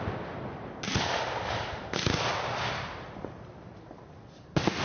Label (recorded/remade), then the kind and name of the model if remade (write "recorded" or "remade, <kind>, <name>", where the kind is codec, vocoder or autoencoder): recorded